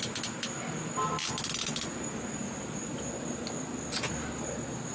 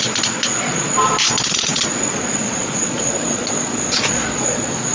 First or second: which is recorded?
first